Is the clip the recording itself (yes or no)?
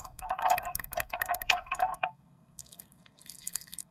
no